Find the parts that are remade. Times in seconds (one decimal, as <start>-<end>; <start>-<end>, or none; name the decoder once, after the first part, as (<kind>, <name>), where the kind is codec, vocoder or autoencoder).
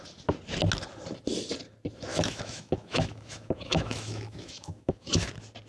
2.1-5.3 (autoencoder, DAC-VAE)